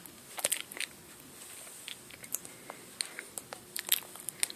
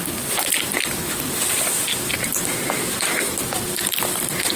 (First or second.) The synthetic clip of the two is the second